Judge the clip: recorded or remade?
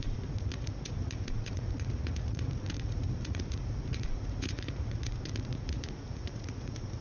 remade